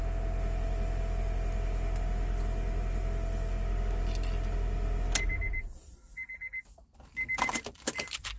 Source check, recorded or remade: recorded